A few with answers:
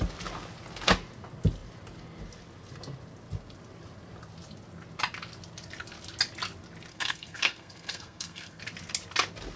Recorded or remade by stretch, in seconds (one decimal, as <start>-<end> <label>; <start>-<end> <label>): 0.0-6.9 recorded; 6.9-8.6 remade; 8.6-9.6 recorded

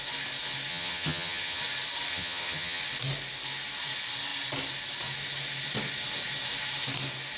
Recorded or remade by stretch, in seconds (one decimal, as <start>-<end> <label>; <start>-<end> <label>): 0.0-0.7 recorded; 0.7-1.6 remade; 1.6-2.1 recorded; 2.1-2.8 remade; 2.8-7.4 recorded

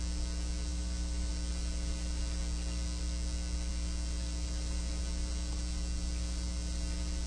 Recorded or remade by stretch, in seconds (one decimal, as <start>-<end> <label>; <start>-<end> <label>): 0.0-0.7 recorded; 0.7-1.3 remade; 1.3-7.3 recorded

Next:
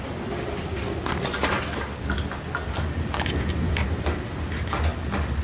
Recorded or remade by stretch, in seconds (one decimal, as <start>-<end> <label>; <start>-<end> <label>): 0.0-5.4 recorded